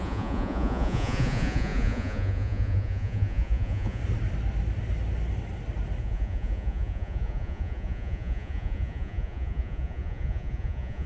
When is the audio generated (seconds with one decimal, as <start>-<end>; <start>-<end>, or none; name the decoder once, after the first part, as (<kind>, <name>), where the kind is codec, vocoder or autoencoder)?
0.0-4.0 (vocoder, Vocos); 6.0-11.1